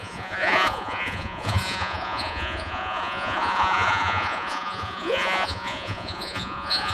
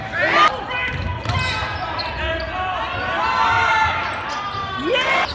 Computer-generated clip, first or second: first